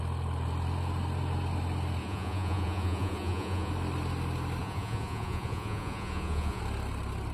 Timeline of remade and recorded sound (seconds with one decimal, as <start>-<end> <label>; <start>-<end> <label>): 0.0-2.0 recorded; 2.0-3.7 remade; 3.7-4.6 recorded; 4.6-6.6 remade; 6.6-7.3 recorded

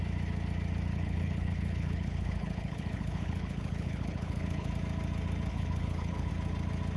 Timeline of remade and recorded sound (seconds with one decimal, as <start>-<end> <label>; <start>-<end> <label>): 0.0-0.9 recorded; 0.9-4.7 remade; 4.7-5.5 recorded; 5.5-6.3 remade; 6.3-7.0 recorded

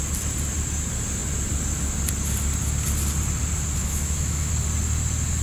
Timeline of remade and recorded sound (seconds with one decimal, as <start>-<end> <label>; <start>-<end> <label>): 0.0-3.8 recorded; 3.8-4.5 remade; 4.5-5.4 recorded

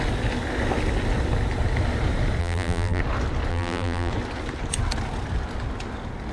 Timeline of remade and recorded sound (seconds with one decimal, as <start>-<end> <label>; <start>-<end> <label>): 0.0-2.4 recorded; 2.4-3.0 remade; 3.0-3.5 recorded; 3.5-4.1 remade; 4.1-6.3 recorded

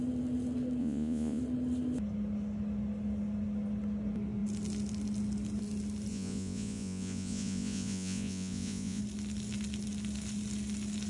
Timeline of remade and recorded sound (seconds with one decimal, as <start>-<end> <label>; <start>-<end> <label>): 0.0-0.8 recorded; 0.8-1.4 remade; 1.4-6.1 recorded; 6.1-9.0 remade; 9.0-11.1 recorded

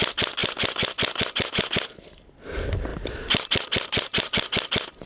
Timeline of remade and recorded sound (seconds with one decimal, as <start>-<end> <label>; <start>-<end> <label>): 0.0-0.4 recorded; 0.4-1.2 remade; 1.2-2.9 recorded; 2.9-5.1 remade